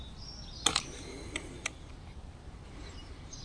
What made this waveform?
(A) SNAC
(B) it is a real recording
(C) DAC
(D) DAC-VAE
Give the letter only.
B